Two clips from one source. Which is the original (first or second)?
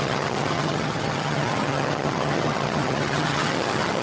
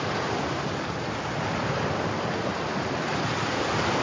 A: second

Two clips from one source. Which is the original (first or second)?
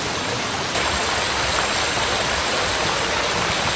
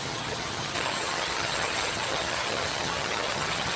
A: first